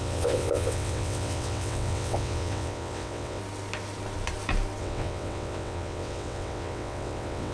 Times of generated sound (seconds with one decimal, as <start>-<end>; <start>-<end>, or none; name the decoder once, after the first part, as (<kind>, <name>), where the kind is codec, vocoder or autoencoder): 0.0-3.4 (vocoder, WaveNeXt); 4.8-7.5

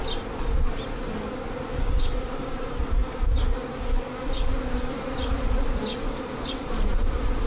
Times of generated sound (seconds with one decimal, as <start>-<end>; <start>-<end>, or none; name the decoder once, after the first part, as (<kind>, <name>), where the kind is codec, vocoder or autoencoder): 2.1-3.0 (vocoder, BigVGAN v2); 4.7-7.5